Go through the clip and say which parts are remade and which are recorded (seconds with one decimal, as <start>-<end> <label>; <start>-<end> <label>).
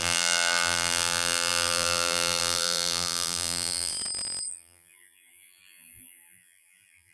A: 0.0-3.9 remade; 3.9-4.5 recorded; 4.5-7.1 remade